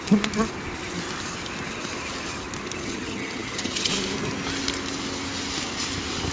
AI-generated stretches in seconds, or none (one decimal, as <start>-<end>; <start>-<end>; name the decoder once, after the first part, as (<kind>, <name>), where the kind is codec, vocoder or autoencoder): 2.8-3.9 (vocoder, HiFi-GAN)